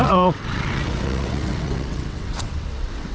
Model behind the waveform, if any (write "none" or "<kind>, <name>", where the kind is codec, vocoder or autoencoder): vocoder, WaveNeXt